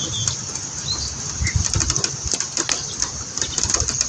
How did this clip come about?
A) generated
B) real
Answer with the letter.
B